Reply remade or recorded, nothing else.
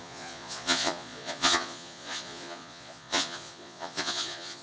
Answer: remade